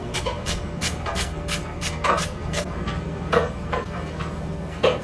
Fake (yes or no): yes